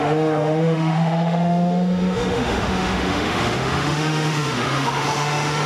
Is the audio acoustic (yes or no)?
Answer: no